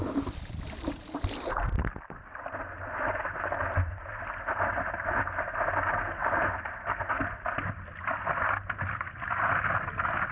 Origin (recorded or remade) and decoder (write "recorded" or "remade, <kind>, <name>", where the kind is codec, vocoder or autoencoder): recorded